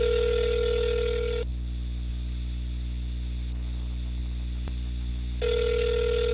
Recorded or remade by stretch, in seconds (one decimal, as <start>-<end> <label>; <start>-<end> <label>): 0.0-6.3 recorded